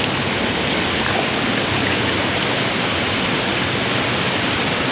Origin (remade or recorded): recorded